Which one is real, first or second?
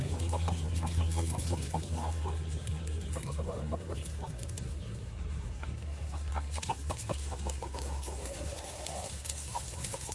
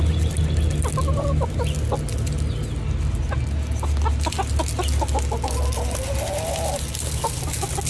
second